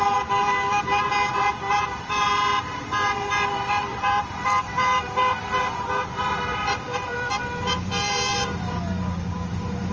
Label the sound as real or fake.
fake